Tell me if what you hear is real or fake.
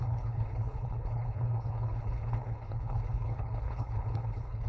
fake